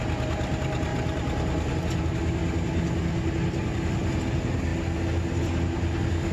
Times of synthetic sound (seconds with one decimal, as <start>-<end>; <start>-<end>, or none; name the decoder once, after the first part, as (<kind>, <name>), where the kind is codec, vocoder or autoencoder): none